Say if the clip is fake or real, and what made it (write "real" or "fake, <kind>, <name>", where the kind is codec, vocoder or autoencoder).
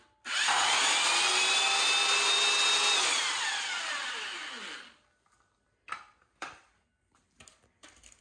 real